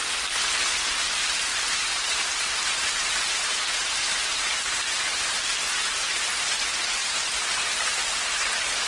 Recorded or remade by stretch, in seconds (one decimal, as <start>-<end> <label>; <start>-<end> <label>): 0.0-1.5 recorded; 1.5-6.5 remade; 6.5-7.0 recorded; 7.0-7.5 remade; 7.5-8.9 recorded